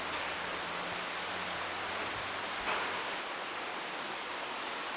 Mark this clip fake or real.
real